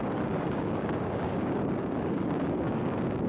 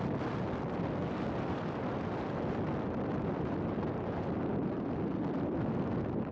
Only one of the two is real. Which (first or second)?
second